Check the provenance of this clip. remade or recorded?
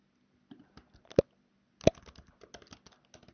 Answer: recorded